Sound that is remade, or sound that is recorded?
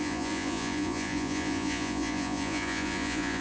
remade